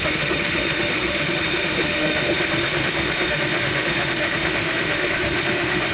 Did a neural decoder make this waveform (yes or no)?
yes